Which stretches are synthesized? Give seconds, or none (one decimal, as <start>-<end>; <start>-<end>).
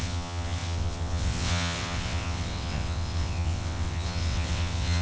0.0-5.0